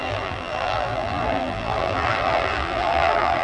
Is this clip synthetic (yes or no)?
yes